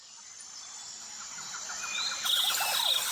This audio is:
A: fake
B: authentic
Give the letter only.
B